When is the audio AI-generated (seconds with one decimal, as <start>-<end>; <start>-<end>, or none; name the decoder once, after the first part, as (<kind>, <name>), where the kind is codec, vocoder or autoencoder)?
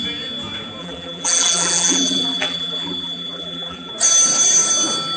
0.8-3.9 (vocoder, BigVGAN v2)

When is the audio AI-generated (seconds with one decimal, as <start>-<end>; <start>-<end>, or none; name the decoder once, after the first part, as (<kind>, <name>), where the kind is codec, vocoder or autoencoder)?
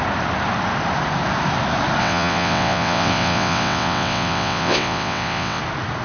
2.0-5.6 (vocoder, WaveNeXt)